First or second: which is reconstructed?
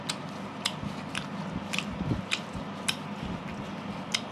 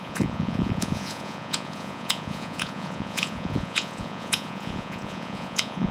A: second